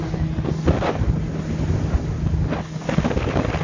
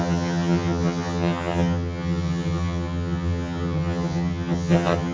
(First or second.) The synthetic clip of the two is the second